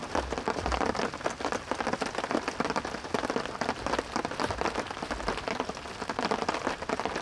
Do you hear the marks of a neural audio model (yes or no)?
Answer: no